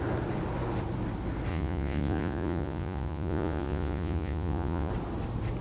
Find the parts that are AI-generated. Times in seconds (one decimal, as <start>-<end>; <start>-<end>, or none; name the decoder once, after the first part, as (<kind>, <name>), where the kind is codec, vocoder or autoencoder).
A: 1.5-4.9 (vocoder, Vocos)

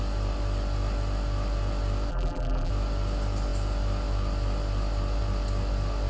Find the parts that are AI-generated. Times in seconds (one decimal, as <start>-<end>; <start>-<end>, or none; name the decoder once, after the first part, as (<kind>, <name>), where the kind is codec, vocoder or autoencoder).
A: 2.1-2.7 (vocoder, BigVGAN v2)